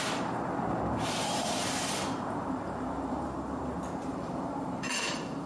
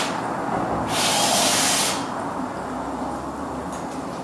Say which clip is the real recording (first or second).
second